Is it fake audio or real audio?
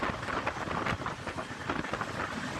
real